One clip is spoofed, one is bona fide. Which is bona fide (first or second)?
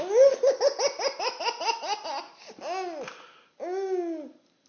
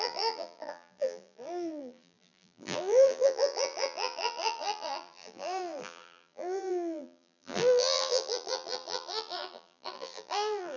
first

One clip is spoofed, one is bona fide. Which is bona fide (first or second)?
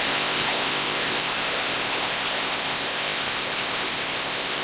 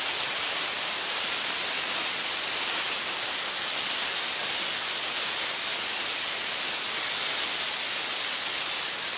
second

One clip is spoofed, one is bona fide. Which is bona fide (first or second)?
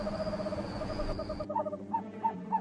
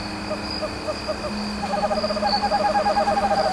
second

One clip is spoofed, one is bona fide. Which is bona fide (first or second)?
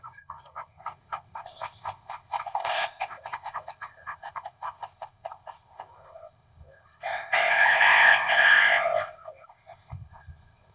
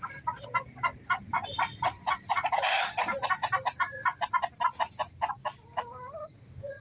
second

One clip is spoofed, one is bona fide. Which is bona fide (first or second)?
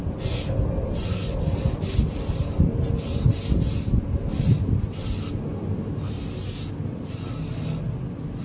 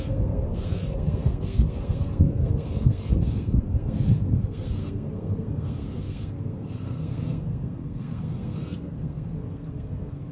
first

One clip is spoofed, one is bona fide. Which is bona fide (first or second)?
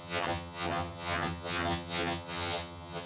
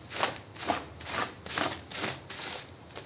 second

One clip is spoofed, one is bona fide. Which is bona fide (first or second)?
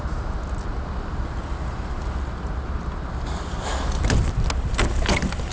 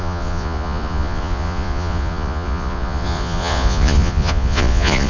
first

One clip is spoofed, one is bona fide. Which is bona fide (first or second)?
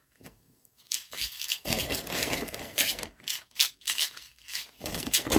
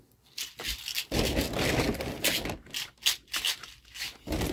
second